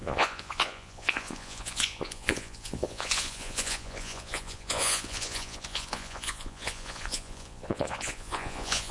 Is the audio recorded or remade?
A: remade